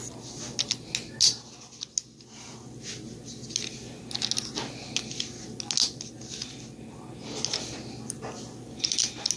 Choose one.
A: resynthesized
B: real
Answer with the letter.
B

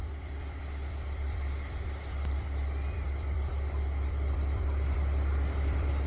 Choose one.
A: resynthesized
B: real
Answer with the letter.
A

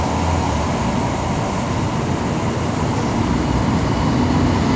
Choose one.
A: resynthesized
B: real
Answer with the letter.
B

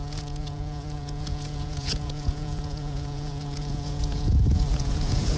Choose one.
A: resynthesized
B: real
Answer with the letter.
A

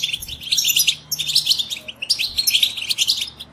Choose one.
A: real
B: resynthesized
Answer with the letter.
A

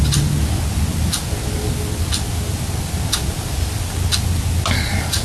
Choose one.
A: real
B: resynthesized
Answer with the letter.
A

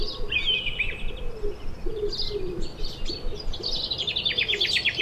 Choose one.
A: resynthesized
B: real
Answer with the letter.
B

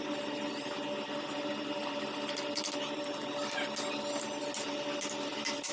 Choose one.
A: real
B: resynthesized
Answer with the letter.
A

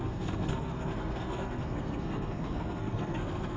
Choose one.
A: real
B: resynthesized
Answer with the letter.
B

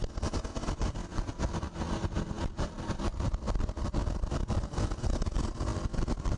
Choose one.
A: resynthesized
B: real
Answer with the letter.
B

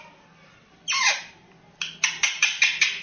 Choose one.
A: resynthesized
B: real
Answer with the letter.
B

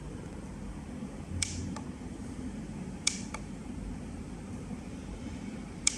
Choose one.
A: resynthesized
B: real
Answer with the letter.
B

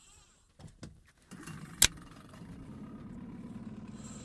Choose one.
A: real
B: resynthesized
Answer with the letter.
A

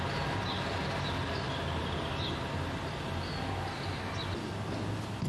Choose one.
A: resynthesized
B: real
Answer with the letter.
B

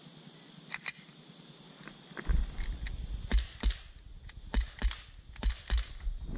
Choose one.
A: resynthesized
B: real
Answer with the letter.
B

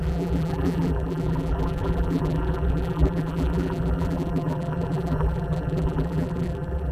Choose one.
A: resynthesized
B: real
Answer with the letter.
A